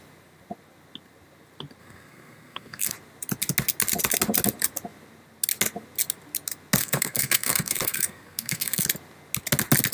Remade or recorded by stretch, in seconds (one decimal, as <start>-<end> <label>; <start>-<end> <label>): 0.0-1.8 recorded; 1.8-2.9 remade; 2.9-6.8 recorded; 6.8-8.8 remade; 8.8-9.9 recorded